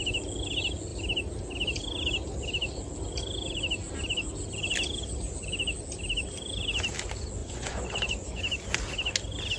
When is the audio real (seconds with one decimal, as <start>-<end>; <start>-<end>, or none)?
0.0-7.4; 8.4-9.6